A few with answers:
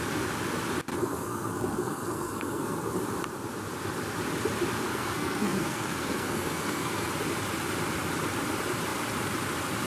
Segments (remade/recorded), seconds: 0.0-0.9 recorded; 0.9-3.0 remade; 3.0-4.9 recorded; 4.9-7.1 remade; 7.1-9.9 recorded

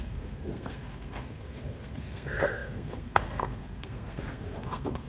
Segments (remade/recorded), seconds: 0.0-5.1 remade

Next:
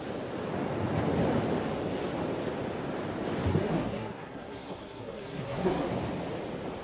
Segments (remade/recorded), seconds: 0.0-3.5 recorded; 3.5-5.9 remade; 5.9-6.8 recorded

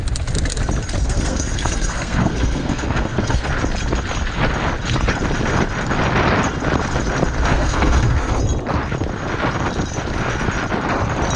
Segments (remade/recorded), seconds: 0.0-1.0 recorded; 1.0-3.5 remade; 3.5-7.5 recorded; 7.5-8.4 remade; 8.4-11.4 recorded

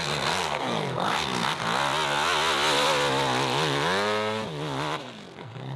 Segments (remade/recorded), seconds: 0.0-1.6 remade; 1.6-5.0 recorded; 5.0-5.8 remade

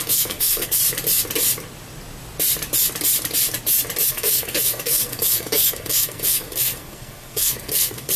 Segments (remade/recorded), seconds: 0.0-0.8 remade; 0.8-4.1 recorded; 4.1-8.2 remade

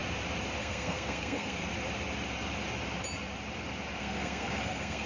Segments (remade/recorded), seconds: 0.0-0.6 recorded; 0.6-1.6 remade; 1.6-4.0 recorded; 4.0-5.1 remade

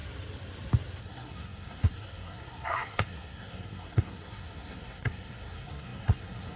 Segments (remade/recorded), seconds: 0.0-1.0 recorded; 1.0-6.6 remade